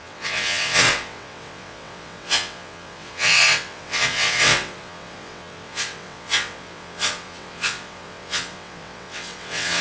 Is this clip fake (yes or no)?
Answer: yes